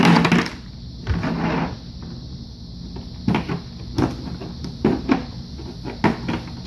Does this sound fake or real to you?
real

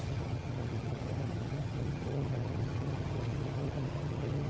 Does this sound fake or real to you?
fake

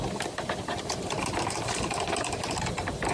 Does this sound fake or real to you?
real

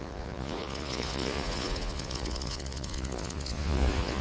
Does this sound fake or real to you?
fake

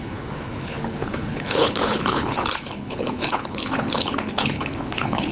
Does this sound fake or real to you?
fake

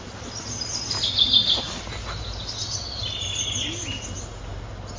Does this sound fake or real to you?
real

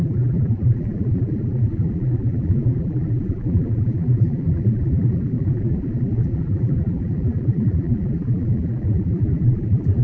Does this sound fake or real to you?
fake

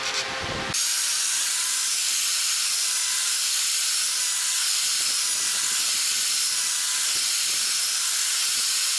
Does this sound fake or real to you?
real